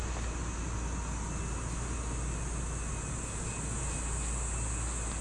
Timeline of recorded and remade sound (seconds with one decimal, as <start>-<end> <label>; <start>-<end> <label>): 0.0-5.2 recorded